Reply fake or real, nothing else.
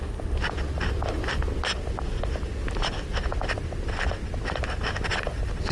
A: real